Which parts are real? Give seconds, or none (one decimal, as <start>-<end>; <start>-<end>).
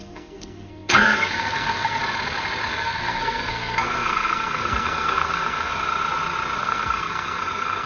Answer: 2.0-2.7; 5.7-6.6